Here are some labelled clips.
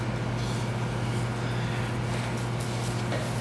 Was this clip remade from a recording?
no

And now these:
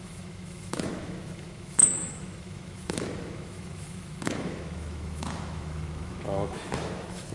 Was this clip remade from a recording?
yes